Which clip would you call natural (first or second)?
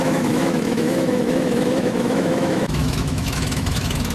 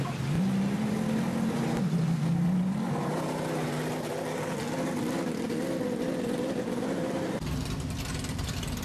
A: second